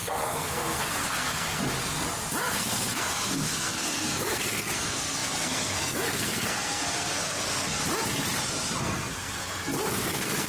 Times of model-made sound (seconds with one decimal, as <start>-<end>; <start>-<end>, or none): 0.0-1.6; 2.4-7.8; 8.8-10.5